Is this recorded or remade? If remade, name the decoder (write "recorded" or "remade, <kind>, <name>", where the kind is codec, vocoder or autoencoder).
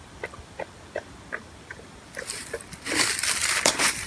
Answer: remade, vocoder, BigVGAN v2